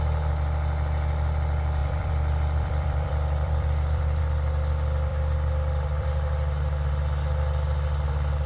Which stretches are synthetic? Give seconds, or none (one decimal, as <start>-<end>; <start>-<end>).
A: 1.8-4.2; 5.1-6.9